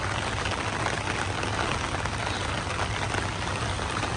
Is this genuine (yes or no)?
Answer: yes